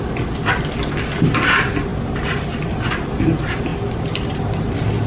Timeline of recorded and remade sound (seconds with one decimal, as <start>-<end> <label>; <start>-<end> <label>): 0.0-5.1 recorded